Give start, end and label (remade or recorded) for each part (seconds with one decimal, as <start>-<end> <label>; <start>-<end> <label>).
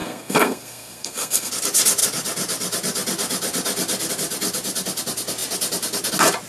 0.0-1.5 remade; 1.5-6.5 recorded